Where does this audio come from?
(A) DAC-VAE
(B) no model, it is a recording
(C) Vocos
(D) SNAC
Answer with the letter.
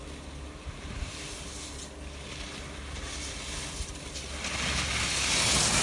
B